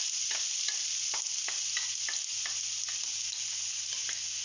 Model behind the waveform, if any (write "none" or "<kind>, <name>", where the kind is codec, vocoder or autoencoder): none